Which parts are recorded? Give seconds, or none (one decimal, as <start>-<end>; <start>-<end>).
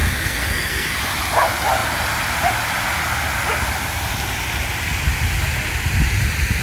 1.0-6.6